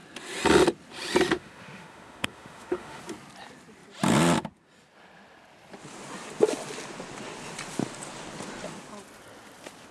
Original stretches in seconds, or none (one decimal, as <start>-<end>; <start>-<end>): 0.0-1.3; 3.0-9.9